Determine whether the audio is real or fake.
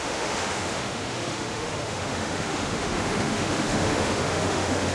fake